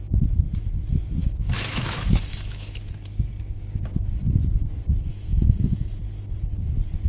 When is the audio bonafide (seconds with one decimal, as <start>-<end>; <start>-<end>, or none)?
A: 0.0-1.2; 2.8-5.1; 6.0-7.1